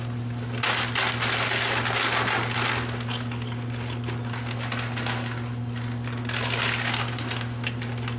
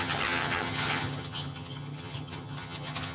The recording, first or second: first